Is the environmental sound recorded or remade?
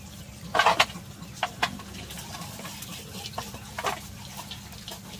recorded